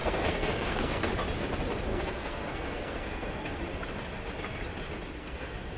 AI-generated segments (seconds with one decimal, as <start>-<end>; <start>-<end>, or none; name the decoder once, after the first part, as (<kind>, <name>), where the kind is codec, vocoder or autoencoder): 0.0-1.1 (codec, SNAC); 1.9-3.6; 5.2-5.8